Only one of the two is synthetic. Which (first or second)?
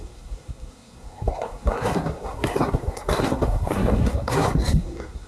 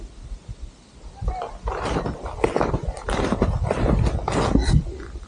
first